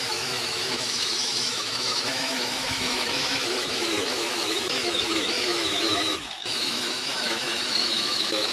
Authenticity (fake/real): fake